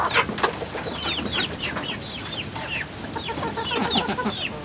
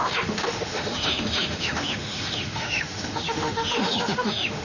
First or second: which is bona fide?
first